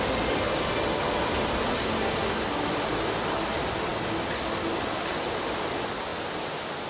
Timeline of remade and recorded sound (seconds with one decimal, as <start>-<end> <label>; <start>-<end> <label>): 0.0-6.9 recorded